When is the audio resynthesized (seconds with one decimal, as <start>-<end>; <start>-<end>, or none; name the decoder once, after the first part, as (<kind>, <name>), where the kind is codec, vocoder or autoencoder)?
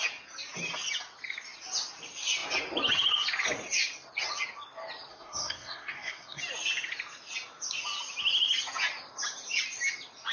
5.1-6.4 (codec, SNAC)